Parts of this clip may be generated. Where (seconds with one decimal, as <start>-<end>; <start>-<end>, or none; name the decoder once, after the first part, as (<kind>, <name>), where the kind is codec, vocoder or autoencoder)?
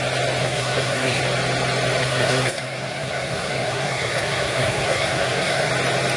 0.4-1.2 (codec, SNAC); 2.0-5.7